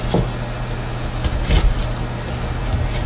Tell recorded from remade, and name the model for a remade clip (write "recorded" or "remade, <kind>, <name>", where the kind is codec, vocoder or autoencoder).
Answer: recorded